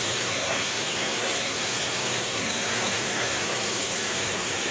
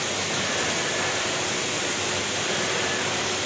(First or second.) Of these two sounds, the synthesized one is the first